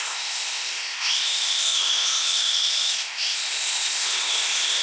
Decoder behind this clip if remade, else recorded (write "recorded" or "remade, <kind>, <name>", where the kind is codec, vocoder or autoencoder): remade, codec, ZipCodec